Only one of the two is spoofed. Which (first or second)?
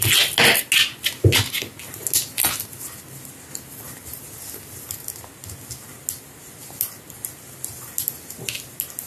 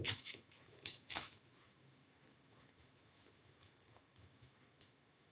second